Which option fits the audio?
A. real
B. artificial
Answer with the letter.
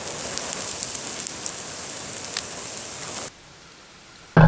A